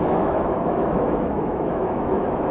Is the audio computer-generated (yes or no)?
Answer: yes